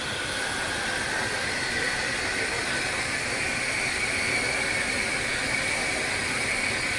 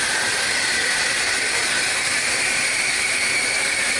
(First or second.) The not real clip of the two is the second